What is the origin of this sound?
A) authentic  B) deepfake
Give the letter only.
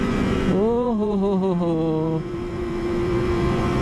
B